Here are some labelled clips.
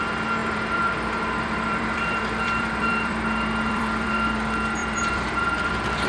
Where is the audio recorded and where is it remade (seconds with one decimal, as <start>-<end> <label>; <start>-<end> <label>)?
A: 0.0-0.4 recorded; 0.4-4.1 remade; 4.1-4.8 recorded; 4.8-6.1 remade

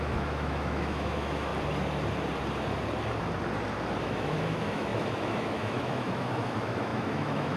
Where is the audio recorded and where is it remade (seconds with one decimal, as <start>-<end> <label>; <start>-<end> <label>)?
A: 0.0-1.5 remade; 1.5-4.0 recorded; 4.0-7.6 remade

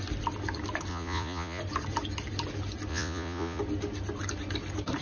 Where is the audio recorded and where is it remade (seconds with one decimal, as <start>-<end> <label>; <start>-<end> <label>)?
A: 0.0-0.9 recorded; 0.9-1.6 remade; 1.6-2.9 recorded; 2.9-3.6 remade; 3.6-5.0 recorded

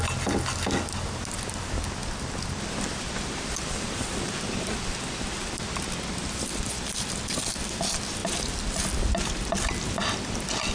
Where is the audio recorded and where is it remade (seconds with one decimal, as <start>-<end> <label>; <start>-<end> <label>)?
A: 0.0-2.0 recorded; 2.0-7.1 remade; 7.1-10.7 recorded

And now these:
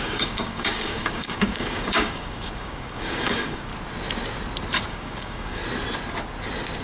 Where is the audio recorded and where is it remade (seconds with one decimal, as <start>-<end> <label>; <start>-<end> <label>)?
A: 0.0-3.7 remade; 3.7-4.9 recorded; 4.9-5.6 remade; 5.6-6.8 recorded

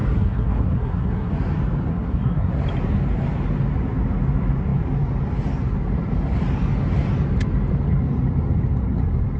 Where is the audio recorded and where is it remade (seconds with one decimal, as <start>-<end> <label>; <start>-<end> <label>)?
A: 0.0-1.3 remade; 1.3-1.9 recorded; 1.9-2.5 remade; 2.5-9.4 recorded